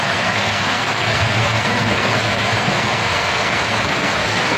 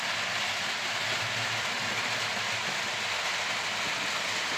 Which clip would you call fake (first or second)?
first